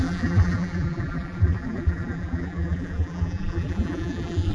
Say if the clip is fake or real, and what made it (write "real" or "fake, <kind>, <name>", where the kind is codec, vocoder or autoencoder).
fake, vocoder, BigVGAN v2